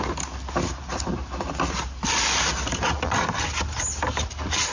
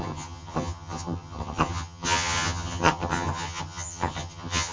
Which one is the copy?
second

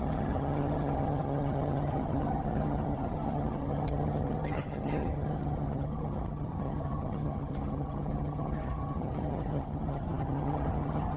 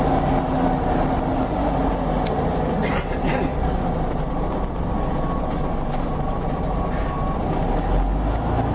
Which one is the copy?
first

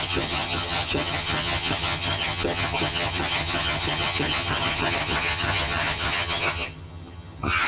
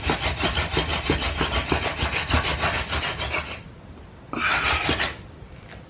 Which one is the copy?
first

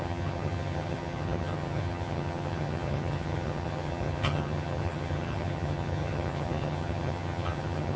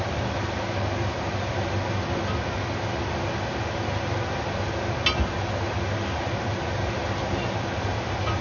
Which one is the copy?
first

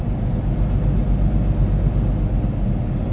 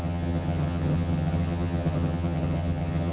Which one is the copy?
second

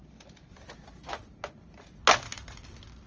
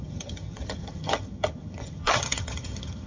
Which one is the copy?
second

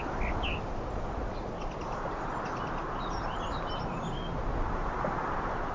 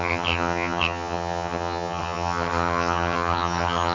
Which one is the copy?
second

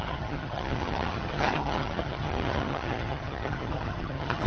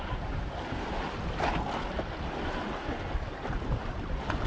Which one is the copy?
first